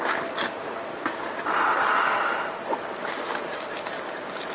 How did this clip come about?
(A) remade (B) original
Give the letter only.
B